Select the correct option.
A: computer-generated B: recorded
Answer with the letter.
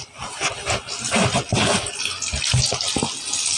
B